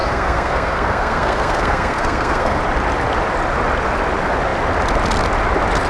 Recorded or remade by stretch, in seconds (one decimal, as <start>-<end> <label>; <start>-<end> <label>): 0.0-2.6 remade; 2.6-5.9 recorded